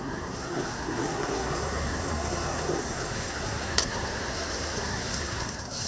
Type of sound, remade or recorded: remade